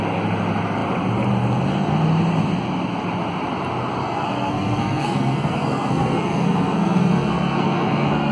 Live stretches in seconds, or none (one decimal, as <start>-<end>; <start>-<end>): 0.0-4.0